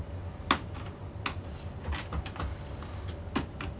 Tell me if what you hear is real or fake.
real